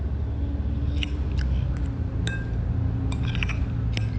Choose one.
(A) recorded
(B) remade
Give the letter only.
A